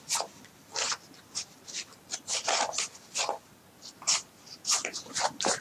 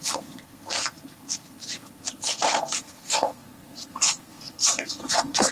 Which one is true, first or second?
first